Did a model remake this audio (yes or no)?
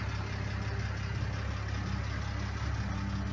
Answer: no